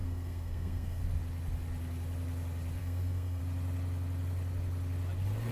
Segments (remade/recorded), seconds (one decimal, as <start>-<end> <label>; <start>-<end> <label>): 0.0-1.0 remade; 1.0-2.8 recorded; 2.8-3.4 remade; 3.4-5.5 recorded